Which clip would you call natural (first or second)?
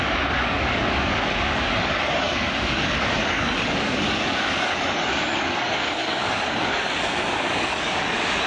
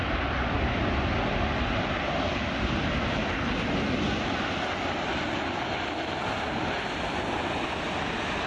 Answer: second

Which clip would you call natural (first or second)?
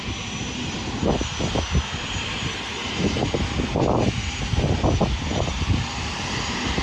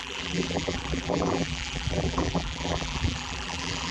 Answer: first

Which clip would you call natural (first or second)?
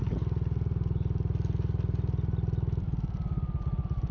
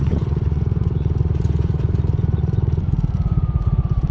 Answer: first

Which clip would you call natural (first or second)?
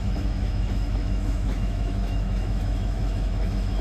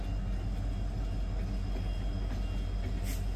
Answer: second